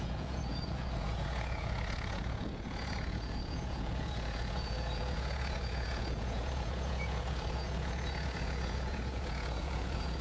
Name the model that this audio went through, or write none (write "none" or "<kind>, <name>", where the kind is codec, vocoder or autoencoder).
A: vocoder, Vocos